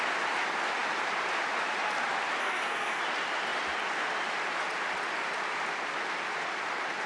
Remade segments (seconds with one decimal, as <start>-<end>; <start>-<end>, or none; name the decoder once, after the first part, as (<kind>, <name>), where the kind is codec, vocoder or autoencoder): 2.4-3.0 (codec, SNAC)

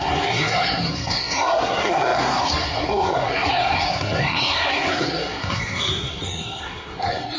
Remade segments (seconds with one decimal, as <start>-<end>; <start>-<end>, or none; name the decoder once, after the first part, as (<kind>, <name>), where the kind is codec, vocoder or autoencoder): 0.0-7.4 (codec, SNAC)

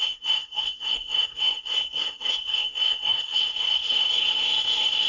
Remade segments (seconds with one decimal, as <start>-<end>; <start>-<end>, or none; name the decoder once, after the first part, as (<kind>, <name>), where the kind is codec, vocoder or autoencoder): 0.0-5.1 (codec, SNAC)

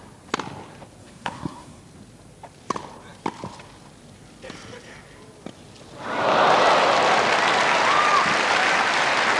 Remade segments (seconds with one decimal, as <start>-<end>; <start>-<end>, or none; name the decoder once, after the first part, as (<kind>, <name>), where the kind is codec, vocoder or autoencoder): 1.0-1.8 (codec, SNAC)

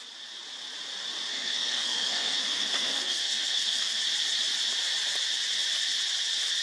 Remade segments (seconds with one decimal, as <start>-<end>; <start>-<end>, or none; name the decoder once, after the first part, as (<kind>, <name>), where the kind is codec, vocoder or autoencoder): 1.3-4.0 (codec, SNAC)

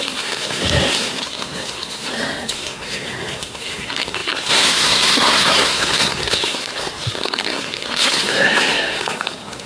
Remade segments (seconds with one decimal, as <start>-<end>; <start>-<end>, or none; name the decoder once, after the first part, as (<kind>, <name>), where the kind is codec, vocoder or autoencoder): 0.0-9.7 (codec, SNAC)